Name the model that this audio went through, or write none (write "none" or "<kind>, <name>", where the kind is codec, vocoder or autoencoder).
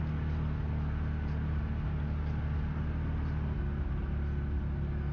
none